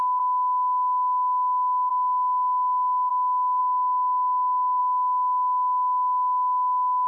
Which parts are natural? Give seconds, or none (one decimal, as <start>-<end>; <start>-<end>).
0.0-1.9; 3.1-7.1